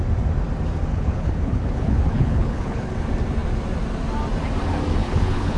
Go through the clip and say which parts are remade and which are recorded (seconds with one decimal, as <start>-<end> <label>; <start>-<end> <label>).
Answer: 0.0-0.9 recorded; 0.9-2.9 remade; 2.9-5.0 recorded; 5.0-5.6 remade

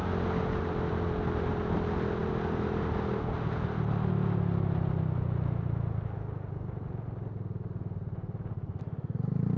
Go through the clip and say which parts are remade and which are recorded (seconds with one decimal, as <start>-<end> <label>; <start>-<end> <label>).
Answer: 0.0-9.6 recorded

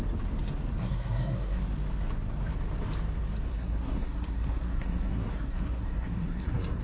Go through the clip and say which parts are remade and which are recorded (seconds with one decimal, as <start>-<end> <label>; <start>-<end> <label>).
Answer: 0.0-0.8 recorded; 0.8-1.6 remade; 1.6-3.5 recorded; 3.5-6.8 remade

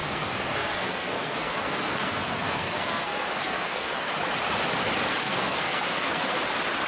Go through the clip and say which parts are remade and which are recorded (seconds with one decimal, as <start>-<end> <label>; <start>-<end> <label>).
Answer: 0.0-4.1 remade; 4.1-5.2 recorded; 5.2-6.4 remade; 6.4-6.9 recorded

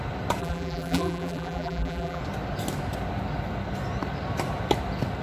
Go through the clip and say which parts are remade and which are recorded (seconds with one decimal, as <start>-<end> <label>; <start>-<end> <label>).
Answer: 0.0-0.4 recorded; 0.4-2.2 remade; 2.2-5.2 recorded

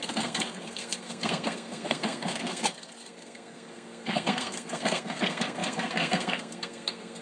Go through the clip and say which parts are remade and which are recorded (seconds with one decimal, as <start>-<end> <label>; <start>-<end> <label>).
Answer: 0.0-7.2 remade

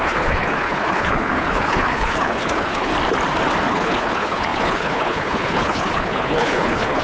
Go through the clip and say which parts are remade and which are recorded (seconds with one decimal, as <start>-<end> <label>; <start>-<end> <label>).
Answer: 0.0-2.9 remade; 2.9-3.7 recorded; 3.7-7.0 remade